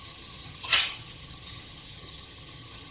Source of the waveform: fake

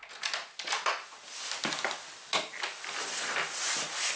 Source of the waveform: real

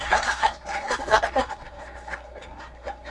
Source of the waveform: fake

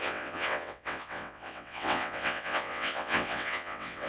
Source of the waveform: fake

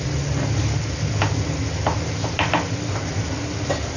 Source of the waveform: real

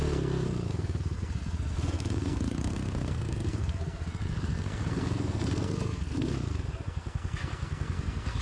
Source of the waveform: fake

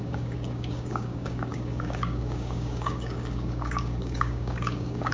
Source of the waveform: fake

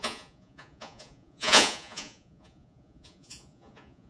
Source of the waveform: fake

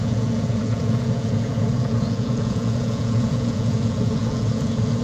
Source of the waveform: fake